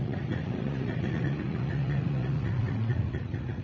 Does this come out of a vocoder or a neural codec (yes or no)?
yes